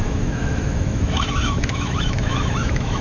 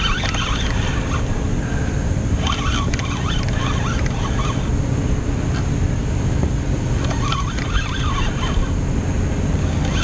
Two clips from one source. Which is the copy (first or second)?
first